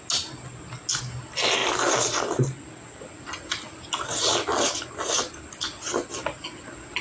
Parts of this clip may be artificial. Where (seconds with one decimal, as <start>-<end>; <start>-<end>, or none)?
none